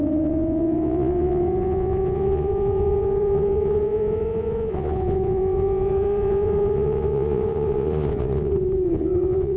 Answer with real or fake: fake